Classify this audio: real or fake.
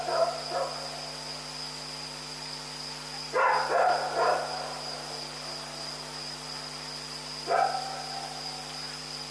real